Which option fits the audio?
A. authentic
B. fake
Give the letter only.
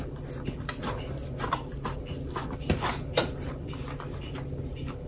A